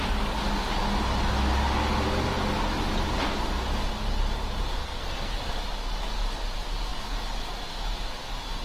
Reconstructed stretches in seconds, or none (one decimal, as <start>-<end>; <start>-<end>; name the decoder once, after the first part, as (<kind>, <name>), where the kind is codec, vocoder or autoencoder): 4.8-5.4 (codec, SNAC)